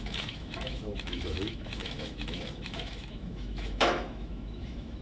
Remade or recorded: remade